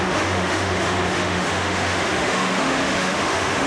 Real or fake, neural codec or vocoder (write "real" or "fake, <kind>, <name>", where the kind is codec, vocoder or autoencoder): fake, autoencoder, DAC-VAE